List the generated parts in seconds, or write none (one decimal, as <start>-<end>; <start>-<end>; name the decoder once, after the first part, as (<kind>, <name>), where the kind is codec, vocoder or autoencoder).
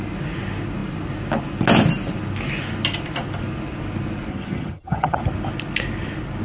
4.3-5.2 (vocoder, HiFi-GAN)